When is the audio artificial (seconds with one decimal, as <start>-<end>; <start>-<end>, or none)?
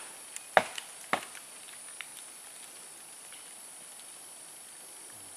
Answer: none